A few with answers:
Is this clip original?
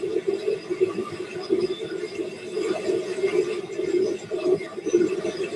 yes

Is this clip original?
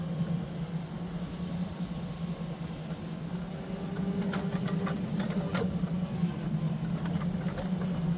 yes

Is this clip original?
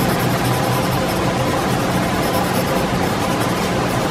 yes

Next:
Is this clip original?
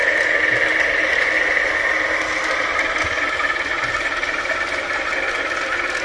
yes